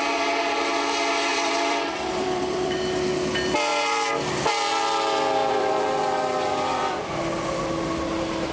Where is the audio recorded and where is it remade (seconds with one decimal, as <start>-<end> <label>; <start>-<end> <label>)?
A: 0.0-1.3 recorded; 1.3-3.1 remade; 3.1-5.4 recorded; 5.4-6.9 remade; 6.9-8.5 recorded